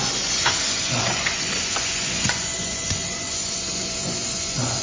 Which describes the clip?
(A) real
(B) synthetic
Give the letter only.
B